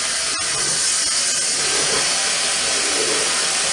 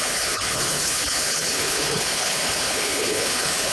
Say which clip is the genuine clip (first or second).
first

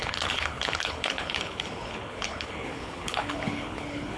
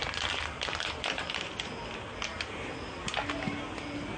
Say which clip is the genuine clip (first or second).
second